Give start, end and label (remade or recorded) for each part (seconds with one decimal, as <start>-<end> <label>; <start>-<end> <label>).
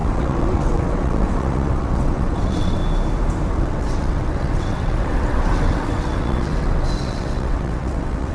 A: 0.0-2.8 remade; 2.8-3.5 recorded; 3.5-8.3 remade